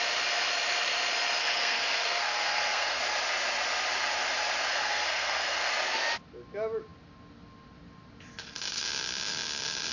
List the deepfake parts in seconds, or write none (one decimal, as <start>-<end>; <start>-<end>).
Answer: 1.4-3.0; 4.7-5.7